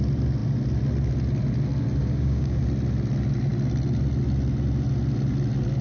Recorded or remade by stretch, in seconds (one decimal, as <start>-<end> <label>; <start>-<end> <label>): 0.0-2.0 recorded; 2.0-2.6 remade; 2.6-5.8 recorded